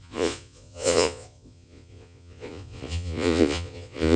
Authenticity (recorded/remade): remade